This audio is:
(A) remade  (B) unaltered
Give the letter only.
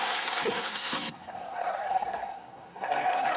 A